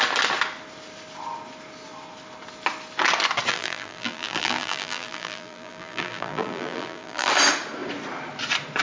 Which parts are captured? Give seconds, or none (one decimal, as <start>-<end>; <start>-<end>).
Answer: 0.0-3.5; 7.3-8.8